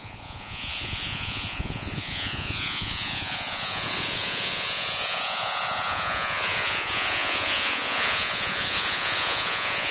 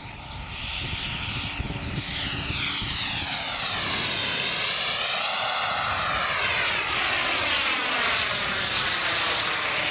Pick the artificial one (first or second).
first